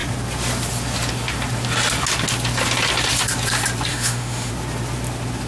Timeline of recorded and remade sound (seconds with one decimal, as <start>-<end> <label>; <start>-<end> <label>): 0.0-3.9 recorded; 3.9-4.5 remade; 4.5-5.5 recorded